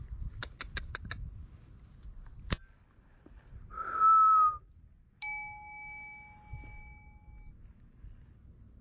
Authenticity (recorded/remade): recorded